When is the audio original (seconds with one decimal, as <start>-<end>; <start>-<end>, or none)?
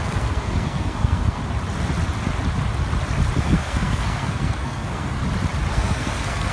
1.4-3.4; 5.2-5.7